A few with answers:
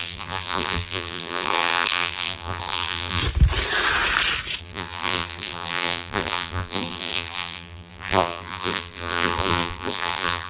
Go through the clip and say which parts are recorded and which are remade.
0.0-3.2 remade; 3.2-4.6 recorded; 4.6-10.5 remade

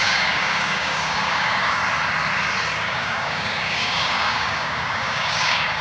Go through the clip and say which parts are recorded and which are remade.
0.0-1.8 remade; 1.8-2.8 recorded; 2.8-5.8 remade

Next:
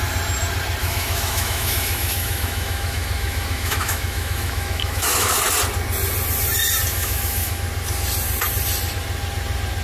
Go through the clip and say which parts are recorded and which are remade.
0.0-0.8 recorded; 0.8-5.4 remade; 5.4-6.9 recorded; 6.9-7.6 remade; 7.6-9.8 recorded